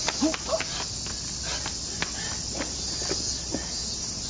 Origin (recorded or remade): recorded